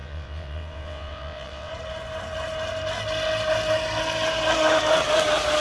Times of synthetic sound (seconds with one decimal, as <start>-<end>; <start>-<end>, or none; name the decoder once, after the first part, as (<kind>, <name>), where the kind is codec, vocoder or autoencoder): 0.0-1.7 (vocoder, WaveNeXt)